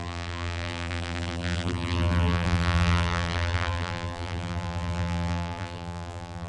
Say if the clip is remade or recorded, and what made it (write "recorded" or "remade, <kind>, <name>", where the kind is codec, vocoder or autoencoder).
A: remade, vocoder, BigVGAN v2